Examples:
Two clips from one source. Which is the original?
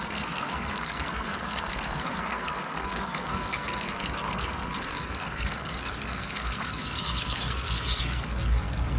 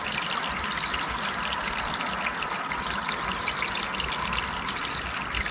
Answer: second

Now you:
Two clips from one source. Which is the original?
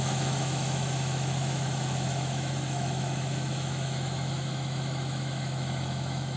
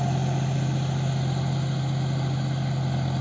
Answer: second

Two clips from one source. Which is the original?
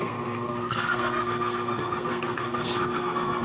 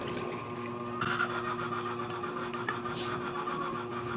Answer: second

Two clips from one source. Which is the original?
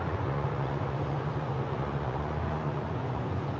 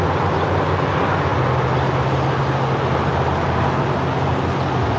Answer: second